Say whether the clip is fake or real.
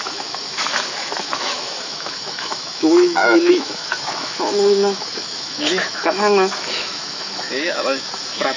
fake